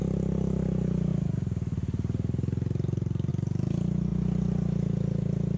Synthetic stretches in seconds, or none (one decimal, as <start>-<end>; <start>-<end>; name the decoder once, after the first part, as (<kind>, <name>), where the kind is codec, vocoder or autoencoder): none